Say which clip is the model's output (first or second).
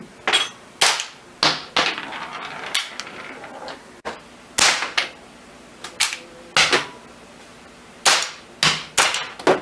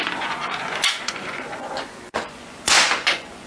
second